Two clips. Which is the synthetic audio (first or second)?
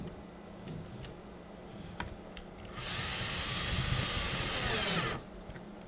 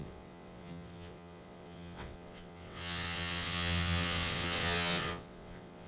second